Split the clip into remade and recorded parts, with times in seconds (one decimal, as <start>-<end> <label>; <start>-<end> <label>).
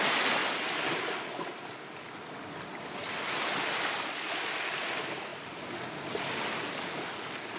0.0-7.6 recorded